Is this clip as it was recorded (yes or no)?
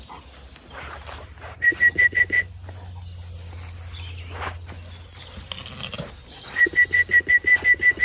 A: yes